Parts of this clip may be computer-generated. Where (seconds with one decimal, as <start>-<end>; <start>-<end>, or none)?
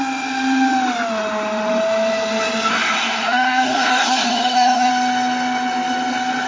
2.7-4.9